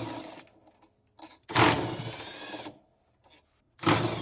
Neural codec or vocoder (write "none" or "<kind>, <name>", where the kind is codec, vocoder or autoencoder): none